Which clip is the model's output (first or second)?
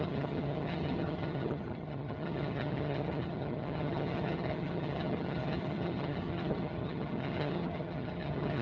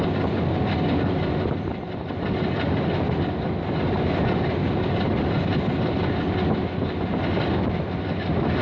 first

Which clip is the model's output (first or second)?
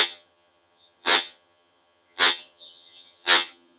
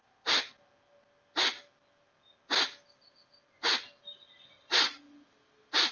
first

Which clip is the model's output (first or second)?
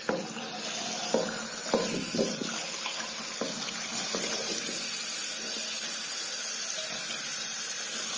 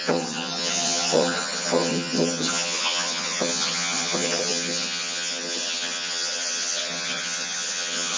second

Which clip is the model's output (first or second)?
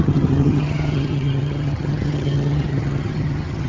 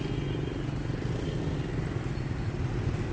first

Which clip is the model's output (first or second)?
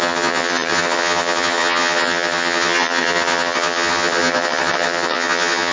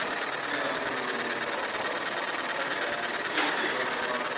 first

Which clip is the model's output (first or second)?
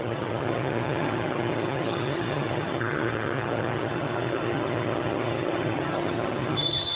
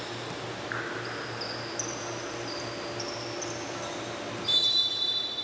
first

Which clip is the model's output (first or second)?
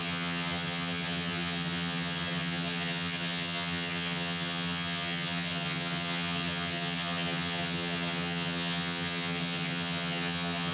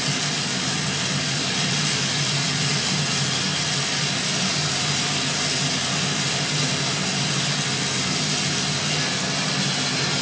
first